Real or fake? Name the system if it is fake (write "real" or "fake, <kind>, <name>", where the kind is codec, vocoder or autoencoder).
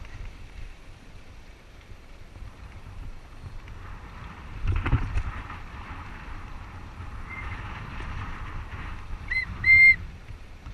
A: fake, vocoder, BigVGAN v2